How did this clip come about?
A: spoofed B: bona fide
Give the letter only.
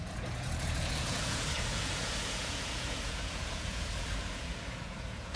A